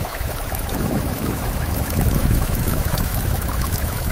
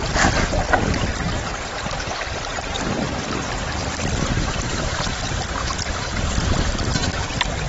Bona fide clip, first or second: second